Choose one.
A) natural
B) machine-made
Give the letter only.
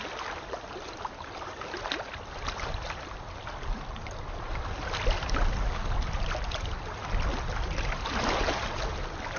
A